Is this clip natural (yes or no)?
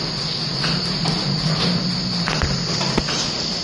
yes